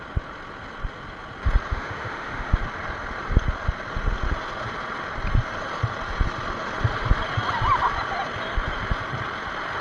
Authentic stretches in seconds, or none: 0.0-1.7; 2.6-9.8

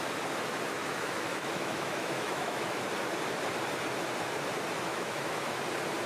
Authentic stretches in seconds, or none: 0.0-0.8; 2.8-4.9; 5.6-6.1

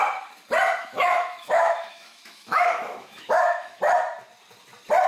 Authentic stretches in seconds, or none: 0.0-0.8; 3.8-5.1